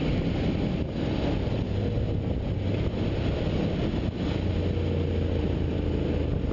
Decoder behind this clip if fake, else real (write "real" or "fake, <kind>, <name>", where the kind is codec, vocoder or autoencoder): real